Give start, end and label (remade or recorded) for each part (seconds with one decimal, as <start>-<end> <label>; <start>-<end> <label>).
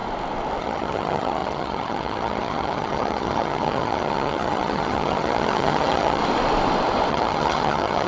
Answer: 0.0-0.6 recorded; 0.6-6.2 remade; 6.2-7.1 recorded; 7.1-8.1 remade